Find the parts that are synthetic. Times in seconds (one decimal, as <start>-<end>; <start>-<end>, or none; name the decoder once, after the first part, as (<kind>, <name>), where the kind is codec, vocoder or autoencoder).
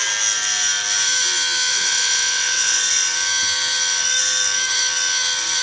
1.7-2.8 (vocoder, WaveNeXt)